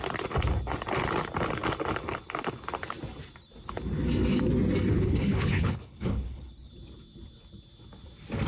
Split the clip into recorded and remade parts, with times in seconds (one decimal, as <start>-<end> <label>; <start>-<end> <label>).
0.0-4.9 recorded; 4.9-6.7 remade; 6.7-8.5 recorded